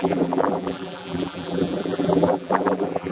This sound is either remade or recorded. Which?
remade